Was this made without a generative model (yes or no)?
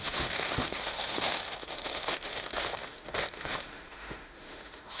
no